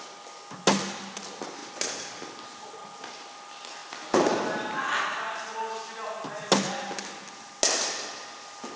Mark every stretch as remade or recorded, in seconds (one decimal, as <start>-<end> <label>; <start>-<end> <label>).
0.0-8.8 recorded

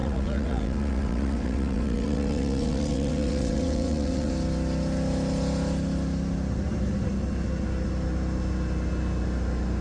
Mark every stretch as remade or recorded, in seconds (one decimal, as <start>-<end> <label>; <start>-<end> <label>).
0.0-4.3 remade; 4.3-9.8 recorded